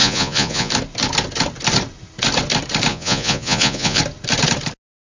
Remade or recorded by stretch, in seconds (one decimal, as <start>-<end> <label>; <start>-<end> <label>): 0.0-0.7 remade; 0.7-2.9 recorded; 2.9-4.0 remade; 4.0-5.1 recorded